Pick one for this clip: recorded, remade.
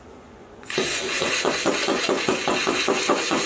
remade